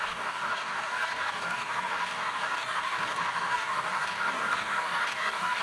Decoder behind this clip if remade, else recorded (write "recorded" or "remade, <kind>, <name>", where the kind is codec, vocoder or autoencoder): remade, codec, DAC